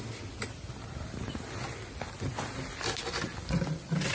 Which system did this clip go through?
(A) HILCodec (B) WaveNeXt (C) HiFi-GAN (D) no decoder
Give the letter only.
D